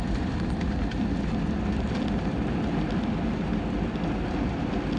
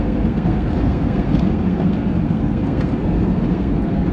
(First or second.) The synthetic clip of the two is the second